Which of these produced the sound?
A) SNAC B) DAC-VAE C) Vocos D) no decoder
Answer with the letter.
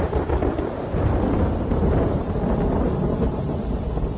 D